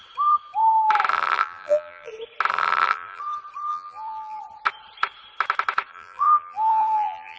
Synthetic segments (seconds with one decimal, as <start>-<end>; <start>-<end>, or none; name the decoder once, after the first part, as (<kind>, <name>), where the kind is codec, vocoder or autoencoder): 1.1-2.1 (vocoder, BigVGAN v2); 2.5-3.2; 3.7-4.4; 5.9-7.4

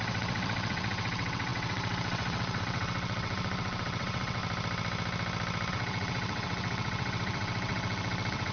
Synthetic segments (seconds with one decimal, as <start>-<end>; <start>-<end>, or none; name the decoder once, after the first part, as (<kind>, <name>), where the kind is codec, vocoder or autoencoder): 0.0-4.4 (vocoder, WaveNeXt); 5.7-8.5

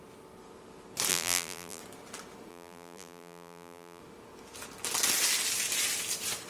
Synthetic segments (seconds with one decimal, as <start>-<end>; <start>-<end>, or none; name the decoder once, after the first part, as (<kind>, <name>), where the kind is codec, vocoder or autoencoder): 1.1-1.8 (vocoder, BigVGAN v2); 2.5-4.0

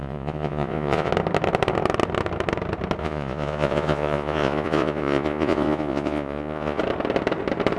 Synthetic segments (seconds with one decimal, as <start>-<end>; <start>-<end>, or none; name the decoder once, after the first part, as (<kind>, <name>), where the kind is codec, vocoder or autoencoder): 0.0-1.1 (vocoder, Vocos); 3.0-6.8

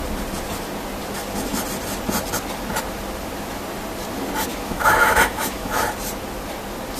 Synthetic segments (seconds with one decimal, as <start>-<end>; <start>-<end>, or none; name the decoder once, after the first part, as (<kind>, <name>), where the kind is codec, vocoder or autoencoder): 4.5-5.8 (autoencoder, DAC-VAE)

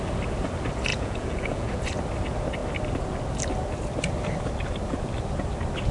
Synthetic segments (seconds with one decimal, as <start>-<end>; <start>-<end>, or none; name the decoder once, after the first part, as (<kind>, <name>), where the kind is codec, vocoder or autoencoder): 0.9-1.8 (vocoder, Vocos)